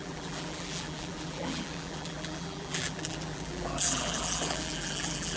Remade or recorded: remade